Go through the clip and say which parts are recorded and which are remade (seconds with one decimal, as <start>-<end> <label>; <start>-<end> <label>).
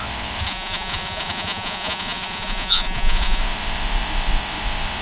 0.0-0.4 recorded; 0.4-3.4 remade; 3.4-5.0 recorded